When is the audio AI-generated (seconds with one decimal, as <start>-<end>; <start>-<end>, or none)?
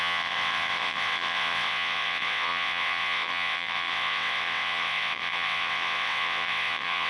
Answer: 0.0-7.1